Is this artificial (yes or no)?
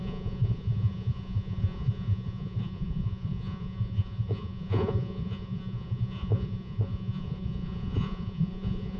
yes